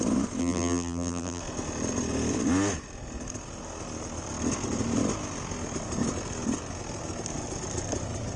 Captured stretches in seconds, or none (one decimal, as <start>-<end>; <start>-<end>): 0.0-0.4; 1.4-8.4